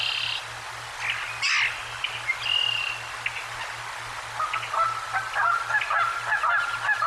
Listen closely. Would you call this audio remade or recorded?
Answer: recorded